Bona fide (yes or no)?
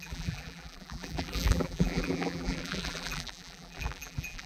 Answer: no